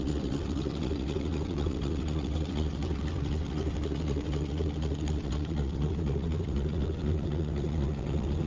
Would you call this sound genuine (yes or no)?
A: no